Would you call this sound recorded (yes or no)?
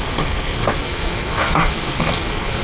no